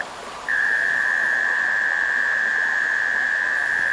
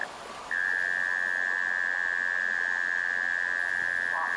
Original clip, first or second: second